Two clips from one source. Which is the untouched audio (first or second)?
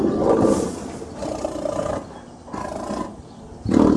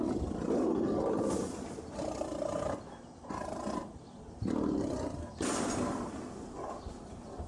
first